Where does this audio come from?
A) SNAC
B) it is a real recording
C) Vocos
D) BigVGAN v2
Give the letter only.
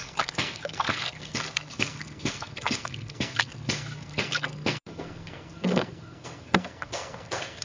A